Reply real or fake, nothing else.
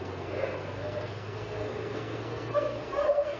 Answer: fake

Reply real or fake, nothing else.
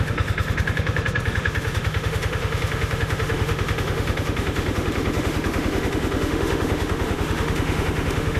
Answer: fake